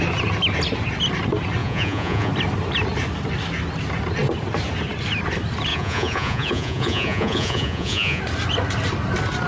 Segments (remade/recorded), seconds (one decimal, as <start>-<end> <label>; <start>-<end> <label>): 0.0-1.6 recorded; 1.6-2.3 remade; 2.3-5.7 recorded; 5.7-8.2 remade; 8.2-9.5 recorded